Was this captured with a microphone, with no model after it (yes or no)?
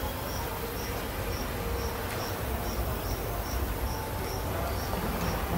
yes